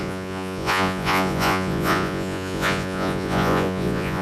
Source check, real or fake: fake